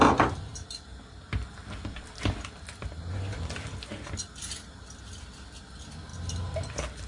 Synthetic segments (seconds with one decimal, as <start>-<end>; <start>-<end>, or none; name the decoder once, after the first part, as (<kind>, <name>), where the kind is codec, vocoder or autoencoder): none